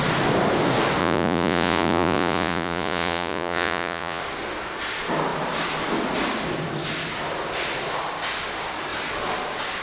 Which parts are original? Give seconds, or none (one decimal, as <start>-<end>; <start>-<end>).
0.0-1.0; 4.2-9.8